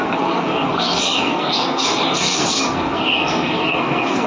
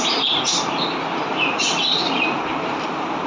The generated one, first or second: first